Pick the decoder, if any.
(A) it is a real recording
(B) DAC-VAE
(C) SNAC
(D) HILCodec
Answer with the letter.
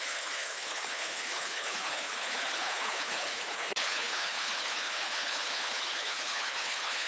D